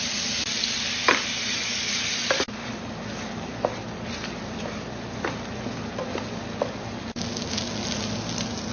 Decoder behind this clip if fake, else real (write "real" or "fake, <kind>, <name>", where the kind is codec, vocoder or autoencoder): real